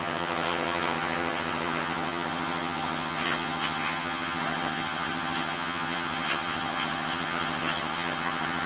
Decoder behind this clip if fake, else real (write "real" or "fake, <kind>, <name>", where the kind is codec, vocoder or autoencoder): fake, vocoder, HiFi-GAN